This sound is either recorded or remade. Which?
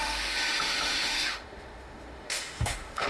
remade